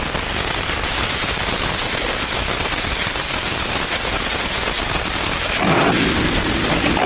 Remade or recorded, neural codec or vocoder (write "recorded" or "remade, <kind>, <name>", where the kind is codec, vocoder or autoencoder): recorded